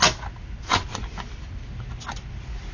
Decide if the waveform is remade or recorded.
recorded